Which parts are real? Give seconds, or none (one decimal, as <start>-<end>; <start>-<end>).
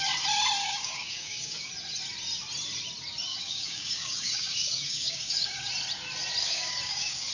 0.0-0.6; 1.7-3.3; 5.7-6.4